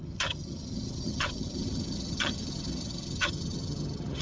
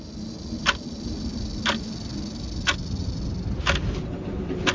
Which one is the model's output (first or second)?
first